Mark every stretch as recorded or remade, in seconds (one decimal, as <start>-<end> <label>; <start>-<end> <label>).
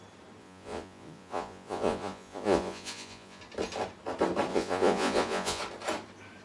0.0-0.4 recorded; 0.4-3.4 remade; 3.4-4.5 recorded; 4.5-5.6 remade; 5.6-6.4 recorded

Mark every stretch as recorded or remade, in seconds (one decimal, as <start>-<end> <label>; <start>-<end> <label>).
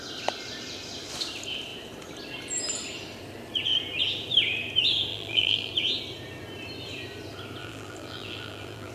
0.0-5.1 recorded; 5.1-5.7 remade; 5.7-7.6 recorded; 7.6-8.9 remade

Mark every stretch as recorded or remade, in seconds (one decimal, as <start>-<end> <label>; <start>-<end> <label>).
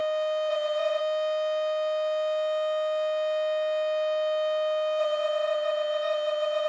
0.0-0.5 recorded; 0.5-1.0 remade; 1.0-5.0 recorded; 5.0-6.7 remade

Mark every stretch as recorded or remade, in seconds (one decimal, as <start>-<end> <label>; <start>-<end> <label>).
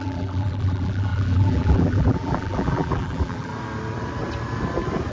0.0-3.5 remade; 3.5-5.1 recorded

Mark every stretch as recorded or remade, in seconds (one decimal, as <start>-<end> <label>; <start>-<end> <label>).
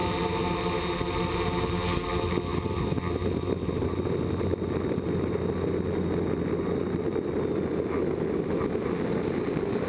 0.0-9.9 recorded